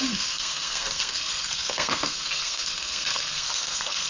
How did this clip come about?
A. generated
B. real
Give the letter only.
A